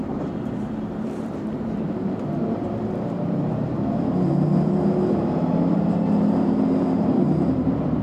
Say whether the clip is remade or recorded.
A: remade